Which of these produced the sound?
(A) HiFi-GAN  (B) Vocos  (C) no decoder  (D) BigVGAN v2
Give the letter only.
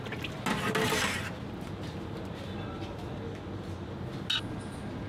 C